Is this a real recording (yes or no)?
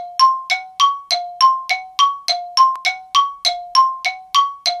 yes